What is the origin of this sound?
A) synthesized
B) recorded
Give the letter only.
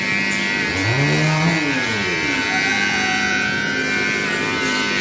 B